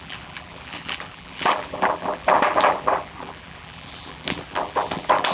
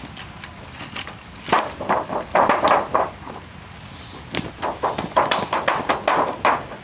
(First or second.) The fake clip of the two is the first